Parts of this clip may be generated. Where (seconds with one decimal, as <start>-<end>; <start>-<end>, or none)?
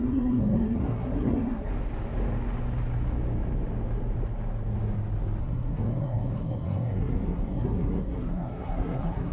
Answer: 0.0-1.7; 5.4-9.3